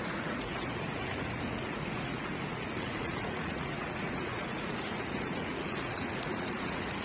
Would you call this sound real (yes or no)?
no